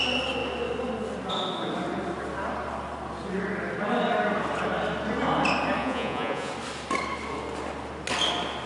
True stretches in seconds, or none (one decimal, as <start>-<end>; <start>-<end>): 0.0-5.8; 6.5-8.7